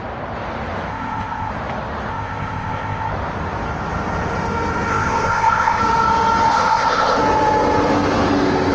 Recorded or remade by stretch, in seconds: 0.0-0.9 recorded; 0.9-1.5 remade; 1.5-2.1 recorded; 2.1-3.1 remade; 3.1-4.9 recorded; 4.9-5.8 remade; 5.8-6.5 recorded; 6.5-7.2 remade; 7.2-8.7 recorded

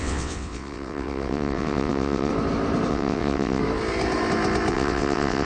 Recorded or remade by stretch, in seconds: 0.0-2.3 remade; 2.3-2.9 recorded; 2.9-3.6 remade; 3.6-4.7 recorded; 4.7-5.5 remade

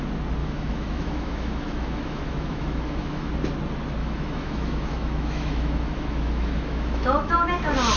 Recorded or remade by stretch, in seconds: 0.0-0.4 recorded; 0.4-3.3 remade; 3.3-4.0 recorded; 4.0-7.3 remade; 7.3-8.0 recorded

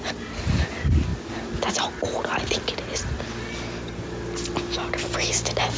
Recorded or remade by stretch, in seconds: 0.0-5.8 recorded